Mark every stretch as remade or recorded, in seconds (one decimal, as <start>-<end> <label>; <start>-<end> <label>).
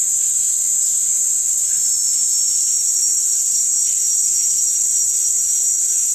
0.0-6.1 recorded